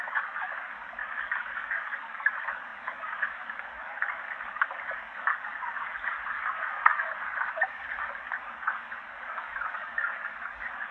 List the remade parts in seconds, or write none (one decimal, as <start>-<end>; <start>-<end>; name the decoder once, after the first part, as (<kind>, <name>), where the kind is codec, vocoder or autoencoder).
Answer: 0.0-10.9 (codec, DAC)